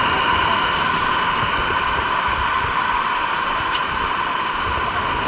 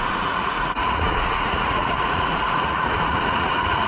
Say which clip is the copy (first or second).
second